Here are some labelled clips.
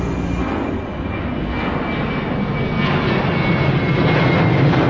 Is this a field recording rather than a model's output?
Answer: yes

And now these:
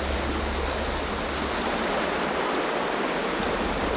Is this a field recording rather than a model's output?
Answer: yes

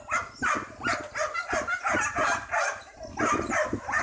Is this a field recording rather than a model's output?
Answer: yes